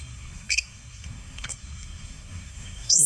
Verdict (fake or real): fake